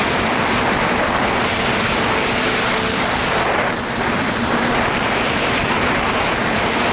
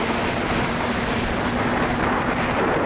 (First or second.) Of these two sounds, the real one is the second